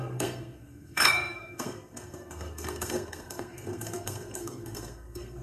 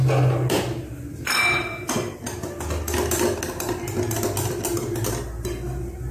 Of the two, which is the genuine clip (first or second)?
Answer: second